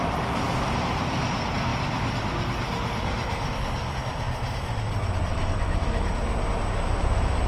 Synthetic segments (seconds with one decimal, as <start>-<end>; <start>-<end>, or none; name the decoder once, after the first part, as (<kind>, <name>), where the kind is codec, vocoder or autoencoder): 5.3-6.1 (autoencoder, DAC-VAE)